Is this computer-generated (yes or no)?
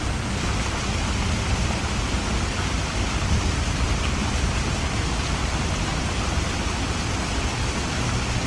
no